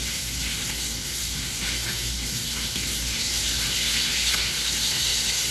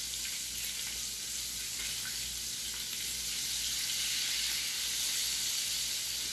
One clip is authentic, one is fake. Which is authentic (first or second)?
second